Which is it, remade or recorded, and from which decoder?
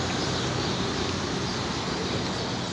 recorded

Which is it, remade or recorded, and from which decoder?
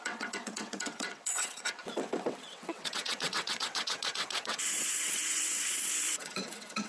remade, vocoder, WaveNeXt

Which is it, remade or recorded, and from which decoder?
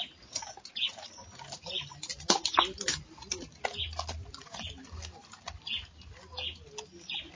recorded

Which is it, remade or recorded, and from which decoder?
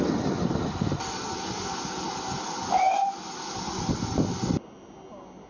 recorded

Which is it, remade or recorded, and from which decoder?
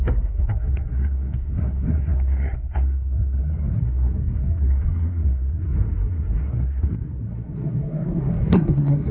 remade, codec, SNAC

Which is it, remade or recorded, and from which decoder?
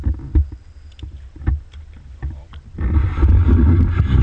recorded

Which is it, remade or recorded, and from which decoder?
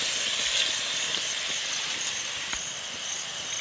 recorded